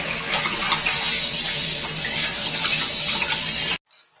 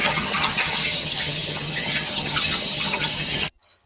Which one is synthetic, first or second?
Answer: second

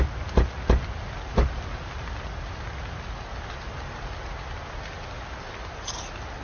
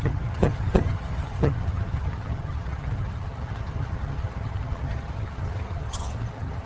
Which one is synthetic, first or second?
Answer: second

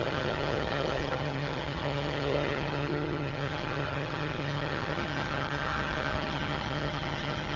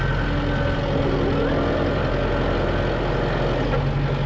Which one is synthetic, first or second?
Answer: first